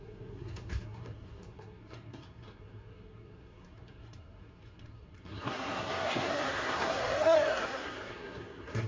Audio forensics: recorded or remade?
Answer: remade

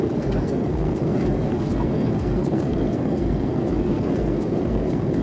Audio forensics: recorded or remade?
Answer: remade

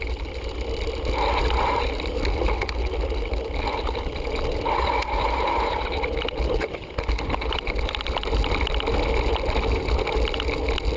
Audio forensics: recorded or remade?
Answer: recorded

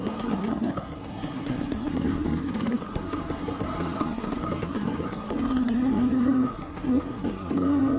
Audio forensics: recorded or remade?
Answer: remade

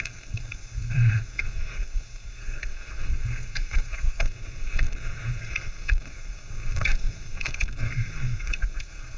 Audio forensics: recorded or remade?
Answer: remade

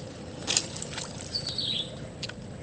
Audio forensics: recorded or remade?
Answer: recorded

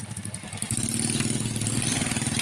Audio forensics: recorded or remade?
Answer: recorded